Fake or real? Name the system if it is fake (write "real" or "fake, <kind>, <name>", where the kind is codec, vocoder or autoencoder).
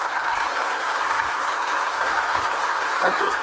fake, codec, SNAC